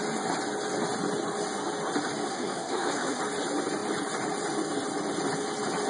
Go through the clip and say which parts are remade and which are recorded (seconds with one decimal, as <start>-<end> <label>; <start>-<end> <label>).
0.0-2.3 recorded; 2.3-3.2 remade; 3.2-5.9 recorded